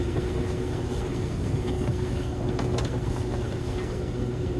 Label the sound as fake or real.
fake